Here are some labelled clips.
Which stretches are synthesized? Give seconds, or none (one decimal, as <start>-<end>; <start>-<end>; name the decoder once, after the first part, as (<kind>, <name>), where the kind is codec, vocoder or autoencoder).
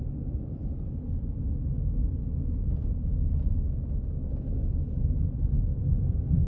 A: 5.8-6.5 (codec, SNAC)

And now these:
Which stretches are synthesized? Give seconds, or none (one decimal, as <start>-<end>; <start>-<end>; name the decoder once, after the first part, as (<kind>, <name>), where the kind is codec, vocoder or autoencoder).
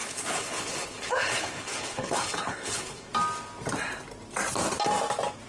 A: 0.0-3.1 (codec, HILCodec)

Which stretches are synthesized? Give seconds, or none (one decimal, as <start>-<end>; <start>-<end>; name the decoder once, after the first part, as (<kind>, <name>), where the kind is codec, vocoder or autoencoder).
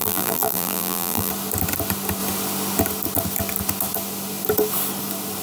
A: 0.0-1.3 (vocoder, BigVGAN v2)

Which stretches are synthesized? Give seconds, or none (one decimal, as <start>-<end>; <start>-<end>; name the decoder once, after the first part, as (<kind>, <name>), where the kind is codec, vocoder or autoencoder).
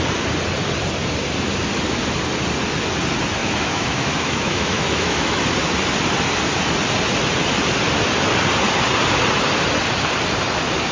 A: 3.4-5.4 (autoencoder, DAC-VAE)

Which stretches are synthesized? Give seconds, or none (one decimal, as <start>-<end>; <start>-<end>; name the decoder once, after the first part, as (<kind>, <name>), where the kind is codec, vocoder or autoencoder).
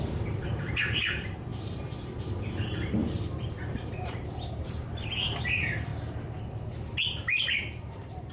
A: 0.0-5.9 (vocoder, BigVGAN v2); 7.8-8.3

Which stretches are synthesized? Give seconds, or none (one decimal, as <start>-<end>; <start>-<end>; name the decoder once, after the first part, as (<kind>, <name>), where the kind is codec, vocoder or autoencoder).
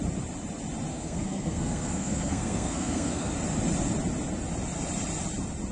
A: 0.9-3.3 (codec, SNAC)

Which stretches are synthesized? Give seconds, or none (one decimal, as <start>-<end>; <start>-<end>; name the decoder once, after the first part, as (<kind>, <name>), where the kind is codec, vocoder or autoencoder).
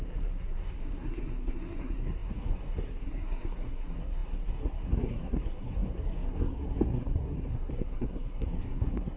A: 0.0-9.2 (codec, SNAC)